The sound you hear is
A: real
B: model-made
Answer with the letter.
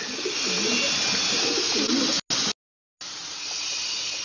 A